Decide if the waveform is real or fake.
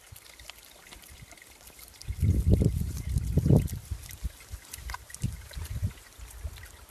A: real